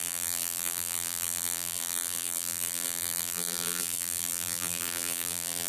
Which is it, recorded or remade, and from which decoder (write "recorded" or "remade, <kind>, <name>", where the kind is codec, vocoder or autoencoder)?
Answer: remade, vocoder, BigVGAN v2